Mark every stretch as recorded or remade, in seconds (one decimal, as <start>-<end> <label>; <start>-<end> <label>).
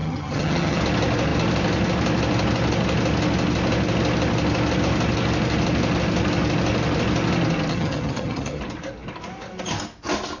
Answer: 0.0-0.8 remade; 0.8-7.7 recorded; 7.7-8.6 remade; 8.6-10.4 recorded